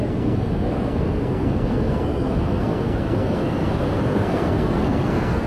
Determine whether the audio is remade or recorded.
remade